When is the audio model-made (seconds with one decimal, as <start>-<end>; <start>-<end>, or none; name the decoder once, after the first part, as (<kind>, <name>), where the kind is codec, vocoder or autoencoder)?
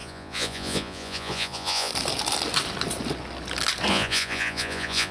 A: 0.0-1.9 (vocoder, Vocos); 3.9-5.1